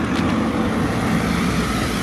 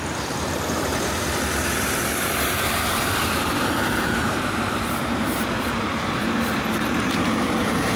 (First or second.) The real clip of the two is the first